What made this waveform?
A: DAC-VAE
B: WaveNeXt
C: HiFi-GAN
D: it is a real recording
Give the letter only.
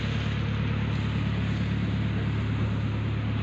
D